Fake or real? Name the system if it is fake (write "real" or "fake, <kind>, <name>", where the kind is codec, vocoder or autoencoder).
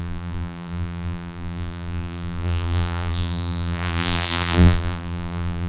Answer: fake, vocoder, BigVGAN v2